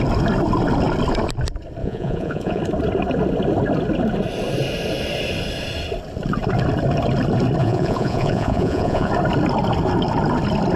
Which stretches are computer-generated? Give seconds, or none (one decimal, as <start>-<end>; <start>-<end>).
1.8-2.6; 7.6-9.1